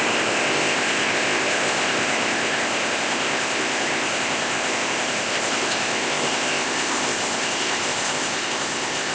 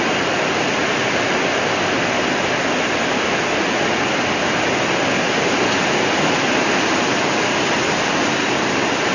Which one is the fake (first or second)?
first